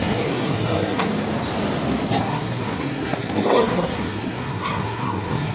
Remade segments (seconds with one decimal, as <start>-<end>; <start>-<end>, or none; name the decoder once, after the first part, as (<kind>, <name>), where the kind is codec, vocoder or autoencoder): 0.0-1.1 (codec, SNAC); 2.2-5.5